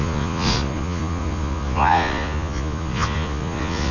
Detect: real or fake fake